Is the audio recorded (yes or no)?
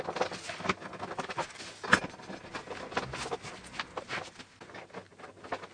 yes